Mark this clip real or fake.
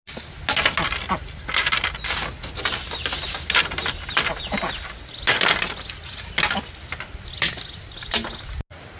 real